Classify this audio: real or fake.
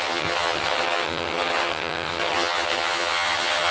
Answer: fake